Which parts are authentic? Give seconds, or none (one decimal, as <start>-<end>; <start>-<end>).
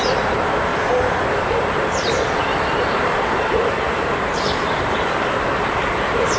0.7-3.3